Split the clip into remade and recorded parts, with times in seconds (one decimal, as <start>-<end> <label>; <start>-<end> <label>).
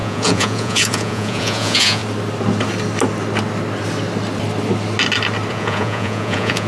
0.0-2.0 remade; 2.0-5.5 recorded; 5.5-6.7 remade